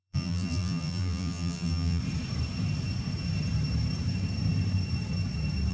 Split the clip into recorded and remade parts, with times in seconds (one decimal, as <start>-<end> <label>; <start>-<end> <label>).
0.0-2.0 remade; 2.0-5.7 recorded